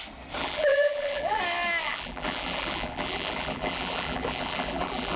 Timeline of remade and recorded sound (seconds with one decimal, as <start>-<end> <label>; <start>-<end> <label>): 0.0-0.4 recorded; 0.4-1.4 remade; 1.4-1.8 recorded; 1.8-5.2 remade